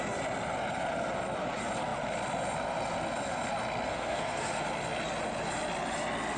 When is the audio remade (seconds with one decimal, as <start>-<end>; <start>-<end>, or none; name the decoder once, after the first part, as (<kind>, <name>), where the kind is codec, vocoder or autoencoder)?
3.9-4.6 (codec, SNAC)

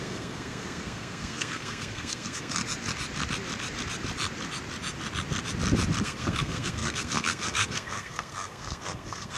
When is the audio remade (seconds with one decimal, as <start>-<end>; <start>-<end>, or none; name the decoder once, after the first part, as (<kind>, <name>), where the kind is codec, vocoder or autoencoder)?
0.0-2.6 (codec, SNAC); 6.0-9.4

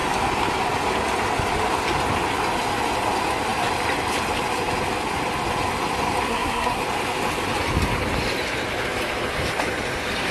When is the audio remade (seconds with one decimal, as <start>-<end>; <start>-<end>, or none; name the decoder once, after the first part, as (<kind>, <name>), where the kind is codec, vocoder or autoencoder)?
6.3-6.8 (codec, SNAC)

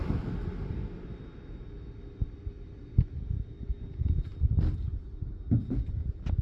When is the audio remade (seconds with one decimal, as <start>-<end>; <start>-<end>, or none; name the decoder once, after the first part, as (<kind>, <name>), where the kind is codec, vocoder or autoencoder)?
none